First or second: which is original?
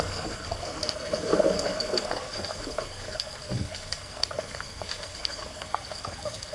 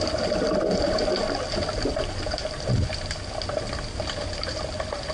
second